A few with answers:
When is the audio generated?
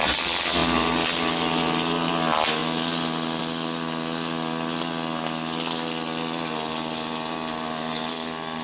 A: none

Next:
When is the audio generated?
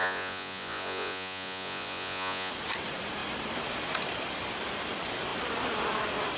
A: 0.0-2.5 (vocoder, Vocos)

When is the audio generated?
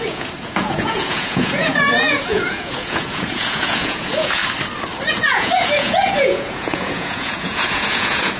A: 0.0-4.4 (vocoder, Vocos); 5.1-8.4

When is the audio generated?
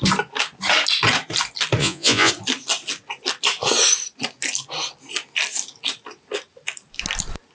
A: 1.8-2.3 (vocoder, Vocos)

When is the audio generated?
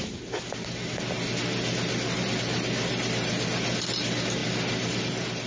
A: none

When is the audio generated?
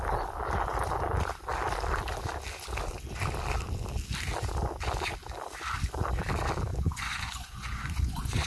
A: 6.7-8.5 (vocoder, Vocos)